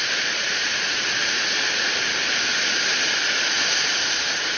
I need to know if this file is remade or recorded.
recorded